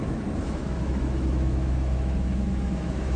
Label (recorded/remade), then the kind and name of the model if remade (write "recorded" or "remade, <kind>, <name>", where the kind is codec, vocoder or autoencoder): remade, autoencoder, DAC-VAE